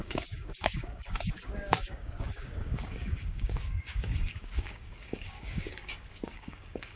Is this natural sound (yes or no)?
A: no